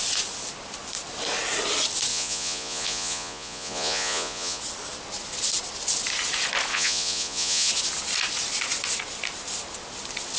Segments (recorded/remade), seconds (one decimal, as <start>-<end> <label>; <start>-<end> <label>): 0.0-2.1 recorded; 2.1-4.6 remade; 4.6-6.7 recorded; 6.7-7.7 remade; 7.7-10.4 recorded